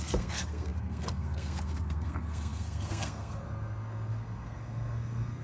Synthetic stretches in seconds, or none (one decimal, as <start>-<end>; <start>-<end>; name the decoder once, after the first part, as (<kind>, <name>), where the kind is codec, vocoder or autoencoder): 0.0-5.4 (codec, SNAC)